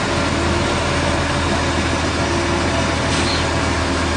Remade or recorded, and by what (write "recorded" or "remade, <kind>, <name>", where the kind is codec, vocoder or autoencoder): recorded